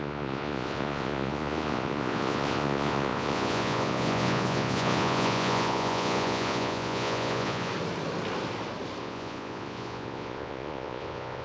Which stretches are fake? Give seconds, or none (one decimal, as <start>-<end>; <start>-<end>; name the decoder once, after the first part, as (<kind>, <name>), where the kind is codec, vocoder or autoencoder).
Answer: 0.0-7.7 (vocoder, Vocos); 9.0-11.4